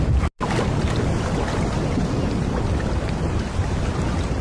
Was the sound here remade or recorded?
recorded